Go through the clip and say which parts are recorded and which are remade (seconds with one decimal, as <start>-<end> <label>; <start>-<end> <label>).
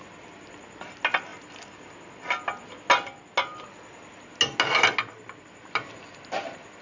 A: 0.0-6.8 recorded